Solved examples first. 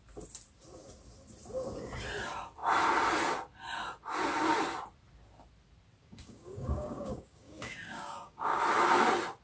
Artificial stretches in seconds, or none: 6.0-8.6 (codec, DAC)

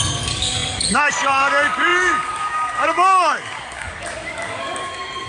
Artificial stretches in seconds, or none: 0.0-5.3 (codec, DAC)

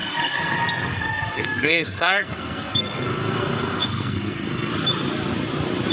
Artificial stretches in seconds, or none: 0.0-4.7 (codec, SNAC)

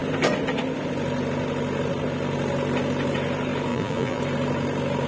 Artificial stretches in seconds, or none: 3.7-4.2 (vocoder, BigVGAN v2)

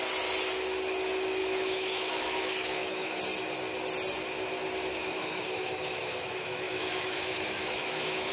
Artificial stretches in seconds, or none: 1.4-3.2 (autoencoder, DAC-VAE); 4.9-8.3

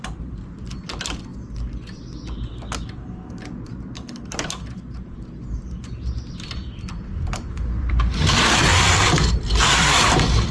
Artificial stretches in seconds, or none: 0.0-1.3 (vocoder, BigVGAN v2); 6.3-10.5

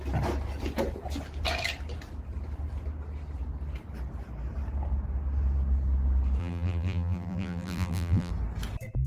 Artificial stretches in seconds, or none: 6.4-8.3 (vocoder, BigVGAN v2)